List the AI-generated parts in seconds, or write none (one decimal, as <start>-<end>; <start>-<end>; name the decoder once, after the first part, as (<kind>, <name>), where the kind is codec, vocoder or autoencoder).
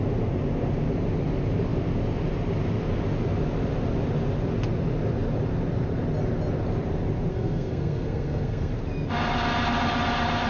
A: 7.3-8.7 (codec, SNAC)